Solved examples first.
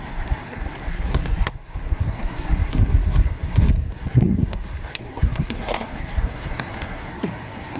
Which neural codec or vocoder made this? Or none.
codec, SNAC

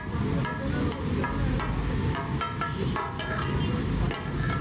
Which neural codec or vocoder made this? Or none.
none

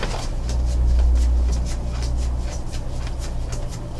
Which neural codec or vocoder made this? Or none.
none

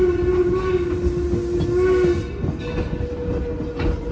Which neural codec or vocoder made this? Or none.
none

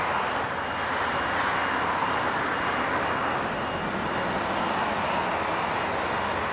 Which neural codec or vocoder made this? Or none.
none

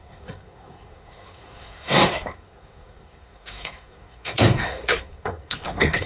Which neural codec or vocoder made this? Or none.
codec, SNAC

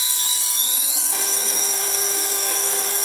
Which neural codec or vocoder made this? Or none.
codec, SNAC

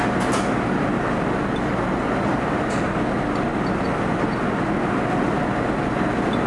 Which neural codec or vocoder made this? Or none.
none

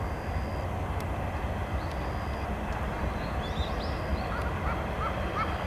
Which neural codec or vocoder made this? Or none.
none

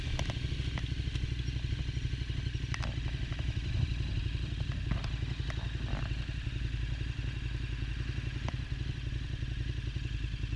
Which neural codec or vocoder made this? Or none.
none